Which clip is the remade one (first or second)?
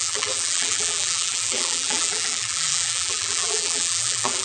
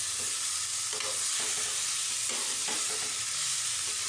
first